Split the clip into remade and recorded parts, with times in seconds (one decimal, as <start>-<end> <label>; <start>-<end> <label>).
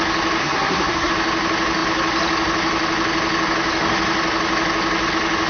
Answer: 0.0-0.4 recorded; 0.4-1.1 remade; 1.1-5.5 recorded